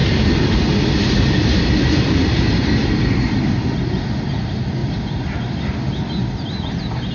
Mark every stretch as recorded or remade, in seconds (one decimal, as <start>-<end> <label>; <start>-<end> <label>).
0.0-7.1 recorded